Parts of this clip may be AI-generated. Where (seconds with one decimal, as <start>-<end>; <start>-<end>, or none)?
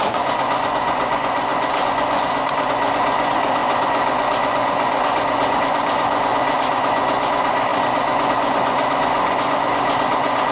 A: 0.0-10.5